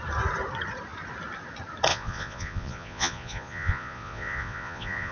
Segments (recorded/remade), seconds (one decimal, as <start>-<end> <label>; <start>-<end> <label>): 0.0-1.9 recorded; 1.9-5.1 remade